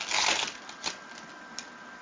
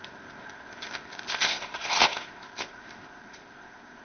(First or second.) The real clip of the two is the first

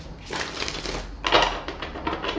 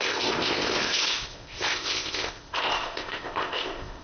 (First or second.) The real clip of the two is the first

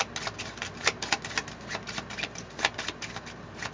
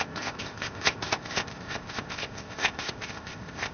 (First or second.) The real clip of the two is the first